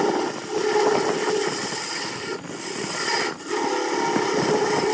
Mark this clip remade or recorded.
recorded